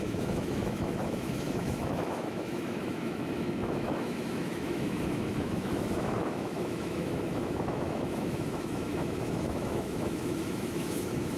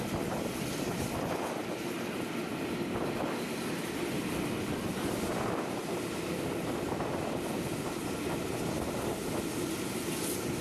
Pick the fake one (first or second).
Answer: first